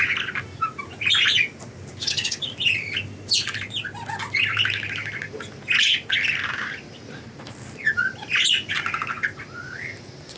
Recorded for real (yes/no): yes